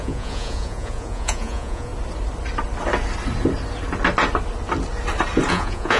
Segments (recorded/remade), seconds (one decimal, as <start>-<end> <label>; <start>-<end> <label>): 0.0-1.9 remade; 1.9-5.5 recorded; 5.5-6.0 remade